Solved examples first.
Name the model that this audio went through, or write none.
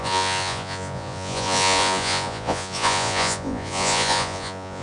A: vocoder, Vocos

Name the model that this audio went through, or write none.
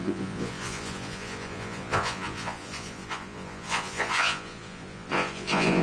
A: vocoder, Vocos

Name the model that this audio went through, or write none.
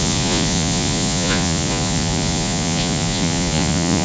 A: vocoder, Vocos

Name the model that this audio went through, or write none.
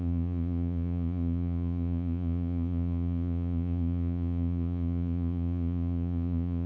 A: vocoder, Vocos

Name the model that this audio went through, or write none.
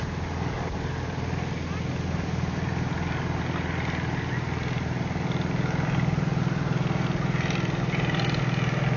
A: none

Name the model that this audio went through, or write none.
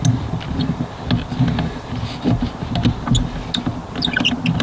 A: none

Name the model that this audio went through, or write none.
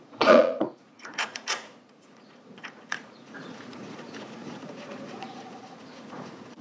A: vocoder, Vocos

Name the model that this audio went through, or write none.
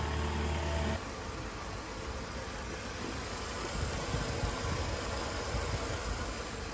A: none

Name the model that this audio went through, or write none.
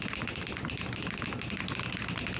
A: none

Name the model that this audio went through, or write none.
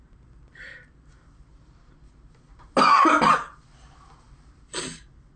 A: none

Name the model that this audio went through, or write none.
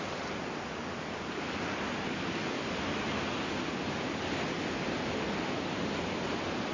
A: none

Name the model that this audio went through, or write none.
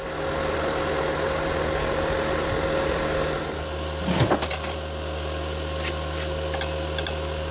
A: none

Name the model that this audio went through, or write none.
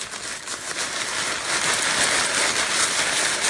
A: none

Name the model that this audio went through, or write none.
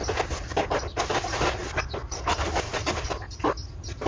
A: none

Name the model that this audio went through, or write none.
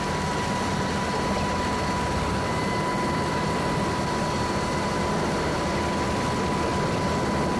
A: none